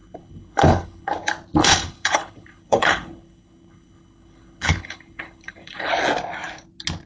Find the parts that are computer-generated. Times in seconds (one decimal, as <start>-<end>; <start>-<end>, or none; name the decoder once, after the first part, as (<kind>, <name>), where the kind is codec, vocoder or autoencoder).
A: 0.0-1.1 (codec, HILCodec); 1.6-5.9